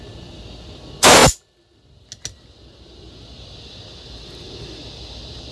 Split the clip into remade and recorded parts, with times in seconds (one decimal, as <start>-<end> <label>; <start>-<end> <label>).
0.0-5.5 recorded